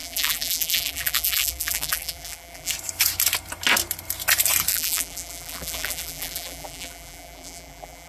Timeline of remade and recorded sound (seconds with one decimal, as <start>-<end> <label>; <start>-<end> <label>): 0.0-2.7 remade; 2.7-4.7 recorded; 4.7-8.1 remade